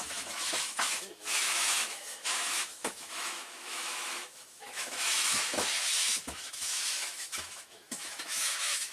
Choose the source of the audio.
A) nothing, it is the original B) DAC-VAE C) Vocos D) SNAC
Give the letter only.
B